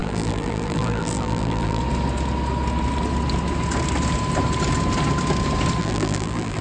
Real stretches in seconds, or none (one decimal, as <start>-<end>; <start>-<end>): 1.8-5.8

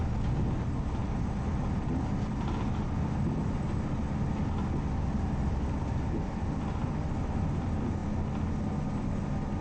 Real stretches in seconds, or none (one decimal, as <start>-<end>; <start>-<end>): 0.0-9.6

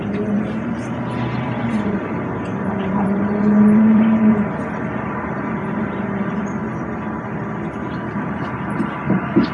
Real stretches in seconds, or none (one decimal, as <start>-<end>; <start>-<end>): 6.6-7.9

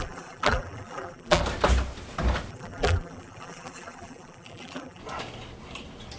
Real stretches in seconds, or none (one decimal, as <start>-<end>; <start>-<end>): 1.4-2.5; 5.0-6.2

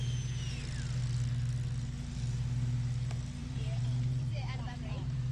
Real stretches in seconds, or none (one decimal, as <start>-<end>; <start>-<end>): 0.0-3.4

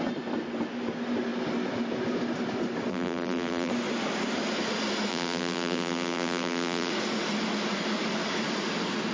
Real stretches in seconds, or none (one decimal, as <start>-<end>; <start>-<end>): 0.0-2.9; 3.7-5.1; 6.9-9.1